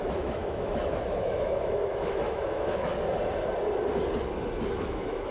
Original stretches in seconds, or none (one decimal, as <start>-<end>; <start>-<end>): 2.9-4.8